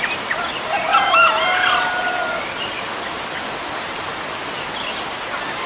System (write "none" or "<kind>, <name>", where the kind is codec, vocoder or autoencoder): none